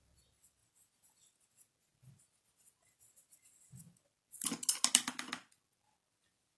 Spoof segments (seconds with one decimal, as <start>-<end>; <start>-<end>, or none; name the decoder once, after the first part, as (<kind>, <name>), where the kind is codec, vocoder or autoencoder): none